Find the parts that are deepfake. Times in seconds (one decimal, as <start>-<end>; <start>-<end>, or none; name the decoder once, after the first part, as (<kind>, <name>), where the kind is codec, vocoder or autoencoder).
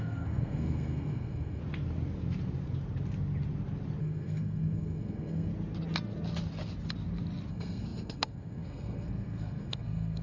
0.0-1.6 (codec, SNAC); 4.0-5.5; 7.5-10.2